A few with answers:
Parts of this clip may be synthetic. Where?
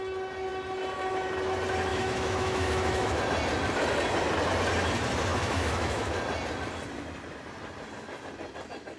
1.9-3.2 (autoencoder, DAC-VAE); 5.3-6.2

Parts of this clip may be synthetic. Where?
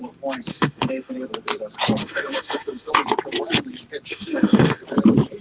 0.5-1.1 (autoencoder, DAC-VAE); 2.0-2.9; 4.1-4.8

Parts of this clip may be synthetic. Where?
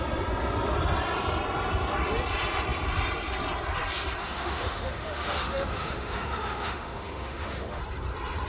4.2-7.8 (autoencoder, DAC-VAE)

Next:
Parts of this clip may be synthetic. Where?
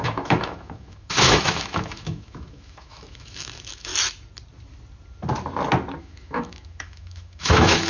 0.0-3.9 (autoencoder, DAC-VAE); 6.0-7.9